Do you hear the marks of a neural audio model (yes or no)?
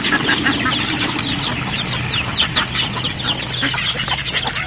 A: no